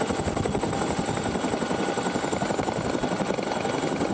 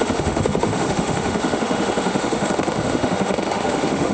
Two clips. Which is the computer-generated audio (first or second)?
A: second